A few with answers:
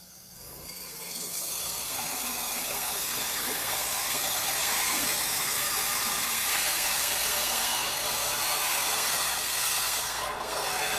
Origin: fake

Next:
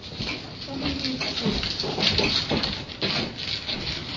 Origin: real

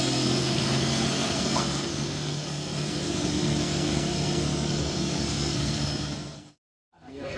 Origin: fake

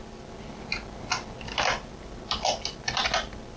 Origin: real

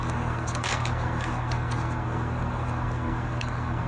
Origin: fake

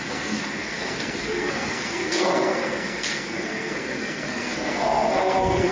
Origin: fake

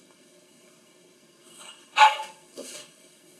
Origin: fake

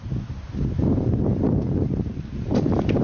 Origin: real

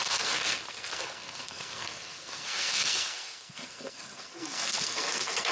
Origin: fake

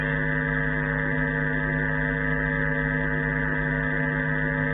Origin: real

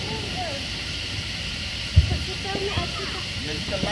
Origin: real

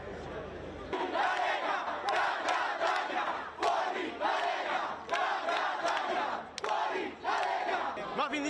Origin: real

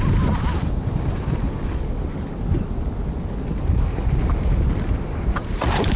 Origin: real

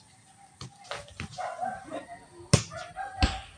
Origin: real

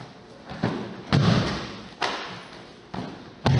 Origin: real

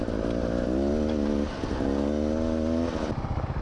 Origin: real